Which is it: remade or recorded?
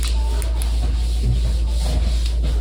recorded